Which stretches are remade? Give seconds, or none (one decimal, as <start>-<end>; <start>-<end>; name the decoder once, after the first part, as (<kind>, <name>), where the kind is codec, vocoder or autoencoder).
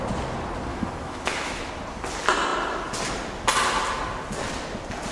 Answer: 0.7-1.7 (autoencoder, DAC-VAE)